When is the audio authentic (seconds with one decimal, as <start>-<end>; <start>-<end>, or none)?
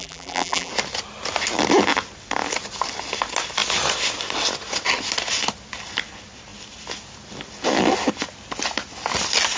0.7-9.6